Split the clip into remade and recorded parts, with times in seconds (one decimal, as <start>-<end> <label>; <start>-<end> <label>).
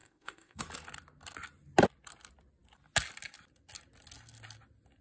0.0-0.6 remade; 0.6-5.0 recorded